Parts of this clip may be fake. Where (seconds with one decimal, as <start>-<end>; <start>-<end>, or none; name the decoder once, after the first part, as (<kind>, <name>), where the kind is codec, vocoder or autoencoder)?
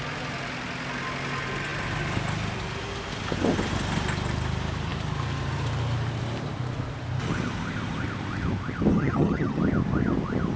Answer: 8.9-9.6 (vocoder, HiFi-GAN)